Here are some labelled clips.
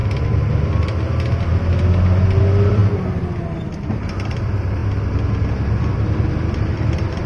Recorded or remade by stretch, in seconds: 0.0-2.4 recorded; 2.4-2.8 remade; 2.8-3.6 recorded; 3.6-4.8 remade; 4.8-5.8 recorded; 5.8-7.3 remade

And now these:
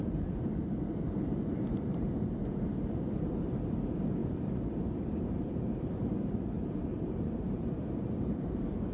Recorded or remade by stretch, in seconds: 0.0-2.1 remade; 2.1-4.2 recorded; 4.2-8.9 remade